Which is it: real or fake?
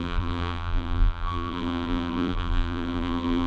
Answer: fake